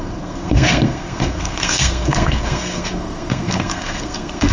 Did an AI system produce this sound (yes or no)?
yes